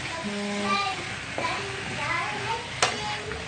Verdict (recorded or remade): recorded